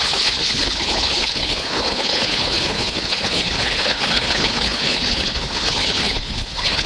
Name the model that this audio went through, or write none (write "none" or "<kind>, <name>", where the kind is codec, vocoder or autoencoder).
codec, HILCodec